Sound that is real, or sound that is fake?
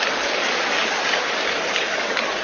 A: fake